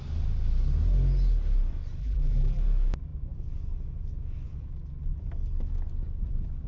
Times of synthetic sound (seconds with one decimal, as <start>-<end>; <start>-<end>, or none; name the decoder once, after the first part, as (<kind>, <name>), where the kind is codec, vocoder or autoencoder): 2.0-2.6 (vocoder, BigVGAN v2)